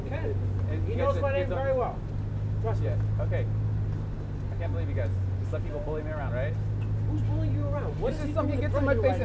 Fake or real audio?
real